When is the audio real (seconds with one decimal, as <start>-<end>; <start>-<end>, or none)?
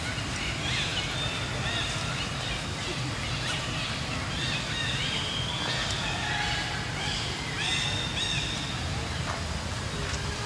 0.0-10.5